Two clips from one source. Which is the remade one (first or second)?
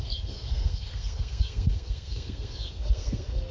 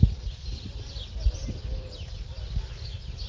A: first